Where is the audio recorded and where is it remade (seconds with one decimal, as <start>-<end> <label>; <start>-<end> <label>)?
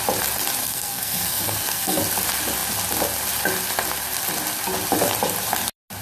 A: 0.0-0.6 recorded; 0.6-2.0 remade; 2.0-6.0 recorded